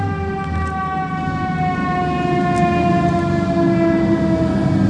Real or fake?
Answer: real